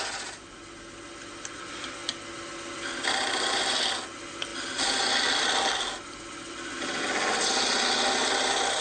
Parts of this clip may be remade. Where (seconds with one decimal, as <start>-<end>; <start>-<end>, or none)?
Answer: none